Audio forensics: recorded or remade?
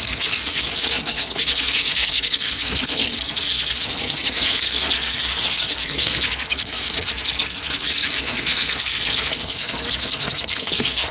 remade